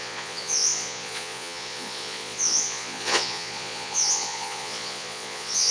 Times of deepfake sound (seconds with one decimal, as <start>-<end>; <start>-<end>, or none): 0.0-5.7